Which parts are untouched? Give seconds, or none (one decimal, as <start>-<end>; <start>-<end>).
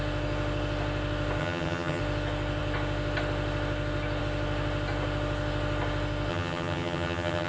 0.0-1.4; 2.0-6.3